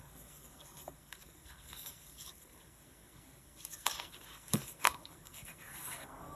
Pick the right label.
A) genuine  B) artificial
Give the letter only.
B